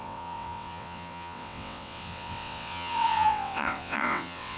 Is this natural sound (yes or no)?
no